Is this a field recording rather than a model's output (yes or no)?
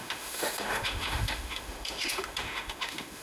no